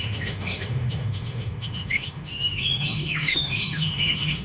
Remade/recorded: remade